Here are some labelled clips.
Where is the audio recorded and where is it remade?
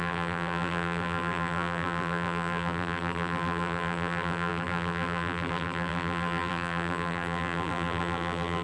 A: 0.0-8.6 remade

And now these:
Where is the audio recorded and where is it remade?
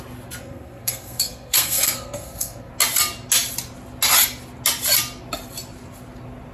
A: 0.0-0.4 recorded; 0.4-2.7 remade; 2.7-6.5 recorded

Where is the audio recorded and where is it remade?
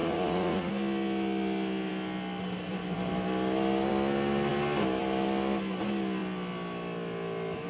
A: 0.0-0.7 remade; 0.7-7.7 recorded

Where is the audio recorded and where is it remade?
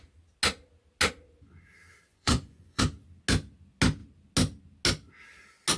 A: 0.0-2.1 recorded; 2.1-2.8 remade; 2.8-5.8 recorded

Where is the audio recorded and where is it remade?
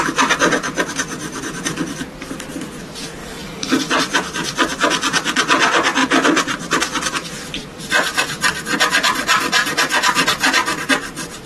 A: 0.0-3.2 recorded; 3.2-3.9 remade; 3.9-11.5 recorded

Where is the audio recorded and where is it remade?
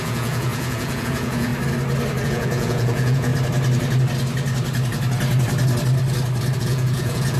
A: 0.0-1.5 remade; 1.5-2.2 recorded; 2.2-3.3 remade; 3.3-6.6 recorded; 6.6-7.4 remade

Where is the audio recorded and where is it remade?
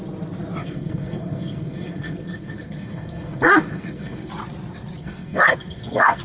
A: 0.0-0.6 recorded; 0.6-4.3 remade; 4.3-5.0 recorded; 5.0-6.2 remade